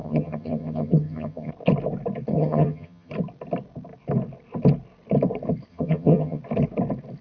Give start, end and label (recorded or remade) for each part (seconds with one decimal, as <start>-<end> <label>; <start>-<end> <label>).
0.0-1.5 remade; 1.5-2.3 recorded; 2.3-3.1 remade; 3.1-5.7 recorded; 5.7-6.4 remade; 6.4-7.2 recorded